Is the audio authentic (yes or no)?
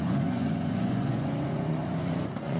no